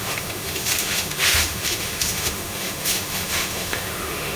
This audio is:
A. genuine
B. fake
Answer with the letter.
B